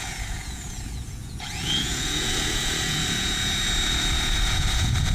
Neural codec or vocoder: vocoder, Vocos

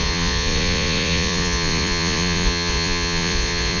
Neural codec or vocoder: vocoder, Vocos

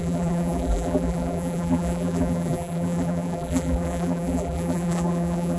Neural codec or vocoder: vocoder, BigVGAN v2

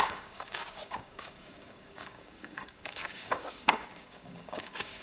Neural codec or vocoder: codec, DAC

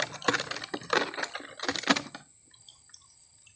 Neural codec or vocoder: none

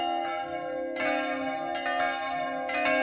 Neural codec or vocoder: none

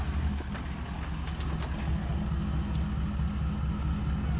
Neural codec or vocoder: none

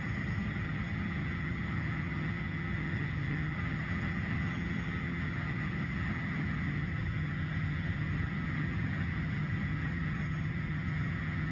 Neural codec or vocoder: vocoder, HiFi-GAN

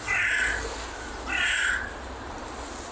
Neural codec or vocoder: none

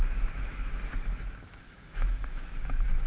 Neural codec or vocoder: autoencoder, DAC-VAE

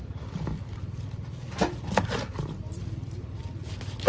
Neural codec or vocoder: none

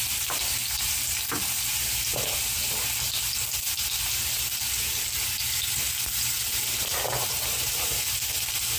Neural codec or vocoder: none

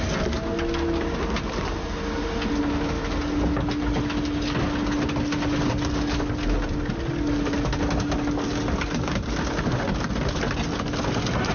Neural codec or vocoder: none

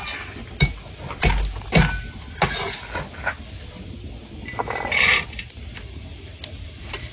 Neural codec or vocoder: none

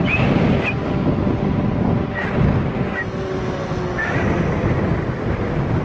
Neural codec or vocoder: none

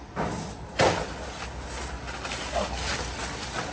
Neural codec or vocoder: none